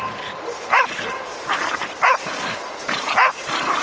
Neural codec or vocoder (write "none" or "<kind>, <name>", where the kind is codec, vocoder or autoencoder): vocoder, BigVGAN v2